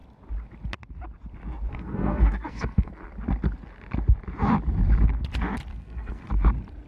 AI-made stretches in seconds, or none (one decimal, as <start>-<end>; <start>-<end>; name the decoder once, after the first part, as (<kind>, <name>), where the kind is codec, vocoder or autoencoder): 1.7-2.9 (codec, SNAC); 5.7-6.3